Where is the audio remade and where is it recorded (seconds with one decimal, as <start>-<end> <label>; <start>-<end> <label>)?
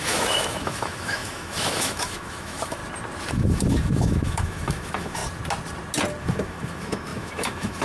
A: 0.0-2.8 remade; 2.8-3.3 recorded; 3.3-5.2 remade; 5.2-6.2 recorded; 6.2-7.8 remade